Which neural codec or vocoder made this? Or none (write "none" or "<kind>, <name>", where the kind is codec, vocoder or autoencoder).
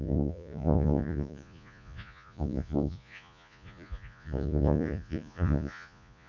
vocoder, Vocos